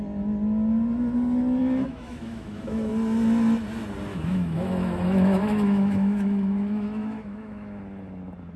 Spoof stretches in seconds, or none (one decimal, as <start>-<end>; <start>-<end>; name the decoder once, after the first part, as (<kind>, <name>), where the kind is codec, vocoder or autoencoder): 1.6-2.9 (autoencoder, DAC-VAE); 4.1-7.8